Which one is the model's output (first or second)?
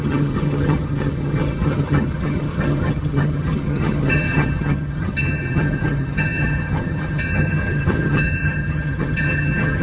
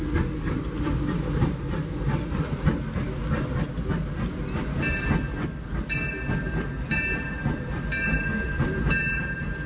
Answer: first